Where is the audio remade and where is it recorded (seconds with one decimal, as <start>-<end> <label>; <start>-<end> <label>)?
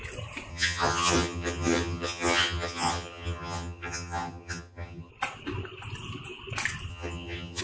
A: 0.0-0.5 recorded; 0.5-5.1 remade; 5.1-6.9 recorded; 6.9-7.6 remade